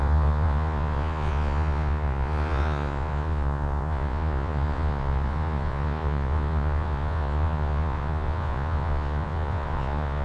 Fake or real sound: fake